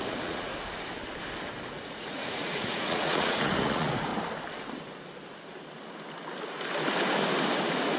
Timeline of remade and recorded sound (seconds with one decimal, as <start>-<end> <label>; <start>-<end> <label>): 0.0-0.5 remade; 0.5-1.7 recorded; 1.7-4.1 remade; 4.1-8.0 recorded